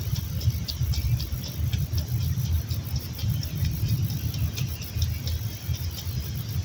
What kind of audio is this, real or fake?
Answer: real